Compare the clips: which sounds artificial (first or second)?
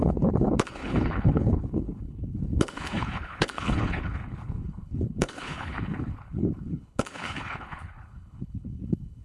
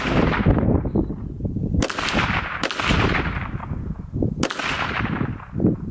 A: first